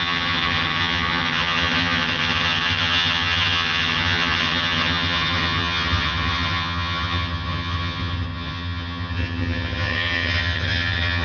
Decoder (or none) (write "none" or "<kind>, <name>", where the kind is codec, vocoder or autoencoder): vocoder, HiFi-GAN